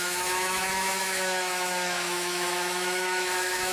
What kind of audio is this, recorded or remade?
remade